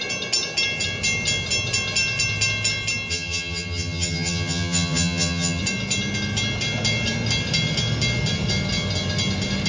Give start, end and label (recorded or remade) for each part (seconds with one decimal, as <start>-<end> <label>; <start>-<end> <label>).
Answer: 0.0-3.1 recorded; 3.1-5.6 remade; 5.6-9.7 recorded